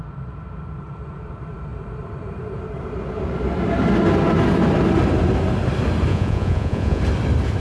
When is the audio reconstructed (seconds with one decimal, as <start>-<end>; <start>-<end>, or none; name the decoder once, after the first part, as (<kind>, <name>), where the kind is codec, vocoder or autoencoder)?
6.1-7.0 (vocoder, Vocos)